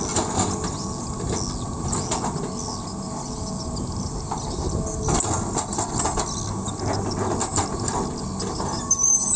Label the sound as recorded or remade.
recorded